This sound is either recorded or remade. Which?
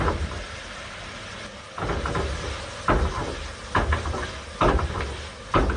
recorded